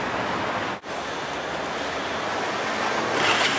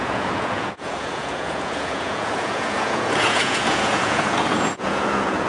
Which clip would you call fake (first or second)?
second